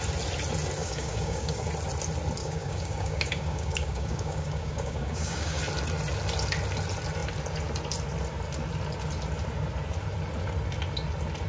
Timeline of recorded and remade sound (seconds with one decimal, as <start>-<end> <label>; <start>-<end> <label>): 0.0-0.8 recorded; 0.8-1.7 remade; 1.7-2.4 recorded; 2.4-5.6 remade; 5.6-11.5 recorded